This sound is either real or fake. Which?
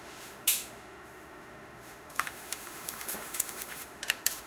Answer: fake